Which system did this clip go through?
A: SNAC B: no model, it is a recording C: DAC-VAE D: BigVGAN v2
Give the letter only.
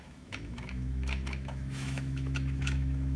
C